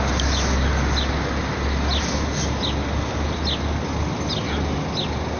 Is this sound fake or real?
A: real